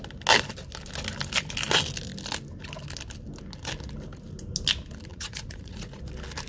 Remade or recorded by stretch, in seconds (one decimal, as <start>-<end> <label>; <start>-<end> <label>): 0.0-5.1 recorded; 5.1-6.0 remade; 6.0-6.5 recorded